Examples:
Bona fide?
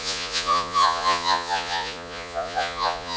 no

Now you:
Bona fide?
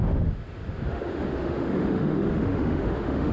no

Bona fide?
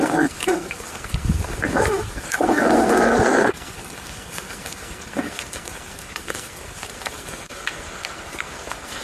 no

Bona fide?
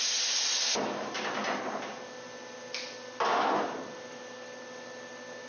yes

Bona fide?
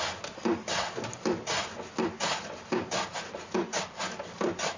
yes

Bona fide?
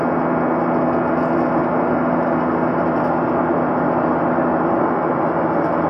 yes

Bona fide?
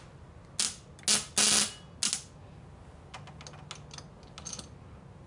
yes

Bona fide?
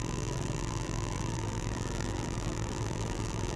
no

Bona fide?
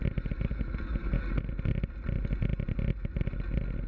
yes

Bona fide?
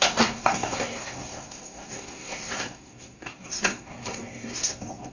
no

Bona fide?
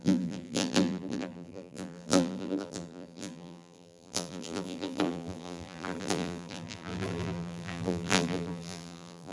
no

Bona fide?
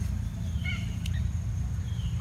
no